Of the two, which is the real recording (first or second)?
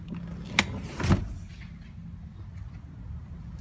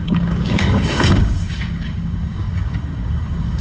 first